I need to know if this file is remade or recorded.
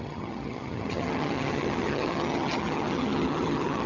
remade